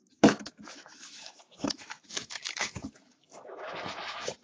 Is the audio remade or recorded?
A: remade